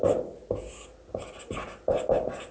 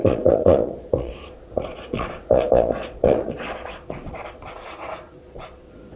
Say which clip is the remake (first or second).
second